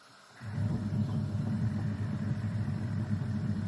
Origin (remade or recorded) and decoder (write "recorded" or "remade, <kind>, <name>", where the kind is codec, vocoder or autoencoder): recorded